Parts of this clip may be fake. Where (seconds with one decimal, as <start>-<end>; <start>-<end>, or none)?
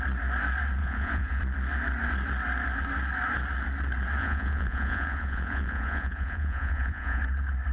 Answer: 0.8-1.4; 4.2-7.2